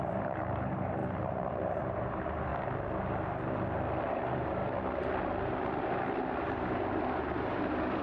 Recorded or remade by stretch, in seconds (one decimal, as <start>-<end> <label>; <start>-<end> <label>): 0.0-2.5 remade; 2.5-4.0 recorded; 4.0-4.6 remade; 4.6-5.2 recorded; 5.2-8.0 remade